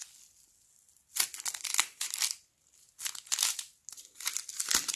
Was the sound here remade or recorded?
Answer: recorded